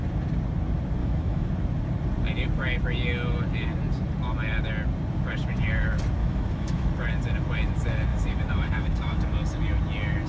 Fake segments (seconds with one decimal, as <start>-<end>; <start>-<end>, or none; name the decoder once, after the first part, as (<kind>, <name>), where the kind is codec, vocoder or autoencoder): 1.0-1.5 (autoencoder, DAC-VAE); 6.2-6.9; 8.1-9.2